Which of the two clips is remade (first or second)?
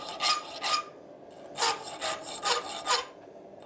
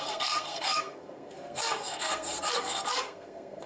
second